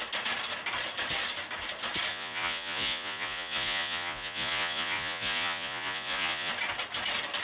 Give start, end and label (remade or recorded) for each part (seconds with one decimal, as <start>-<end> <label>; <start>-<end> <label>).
0.0-2.1 recorded; 2.1-6.5 remade; 6.5-7.4 recorded